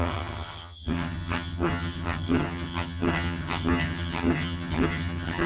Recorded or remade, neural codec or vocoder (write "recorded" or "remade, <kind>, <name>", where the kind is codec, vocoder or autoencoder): remade, vocoder, HiFi-GAN